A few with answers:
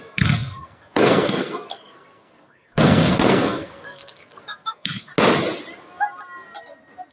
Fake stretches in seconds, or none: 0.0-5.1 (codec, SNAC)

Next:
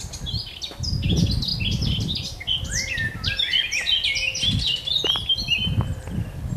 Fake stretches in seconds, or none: none

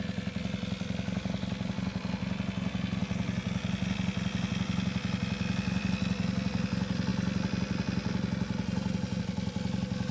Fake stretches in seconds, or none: none

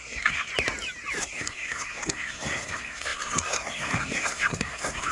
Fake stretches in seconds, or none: 0.0-0.5 (codec, SNAC); 1.2-5.1

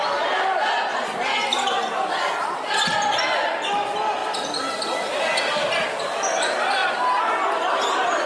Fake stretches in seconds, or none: none

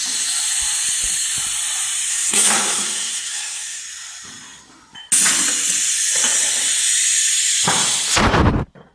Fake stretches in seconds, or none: 2.1-3.8 (codec, SNAC)

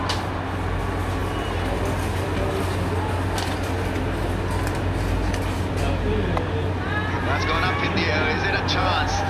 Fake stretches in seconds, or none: none